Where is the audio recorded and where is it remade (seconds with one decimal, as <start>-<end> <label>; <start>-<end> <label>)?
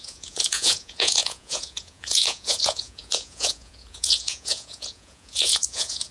0.0-6.1 remade